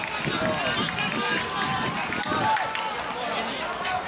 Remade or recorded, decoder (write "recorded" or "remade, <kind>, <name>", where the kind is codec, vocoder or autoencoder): recorded